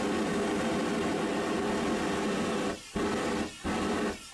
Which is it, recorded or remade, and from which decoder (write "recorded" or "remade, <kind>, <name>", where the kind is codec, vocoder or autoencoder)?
recorded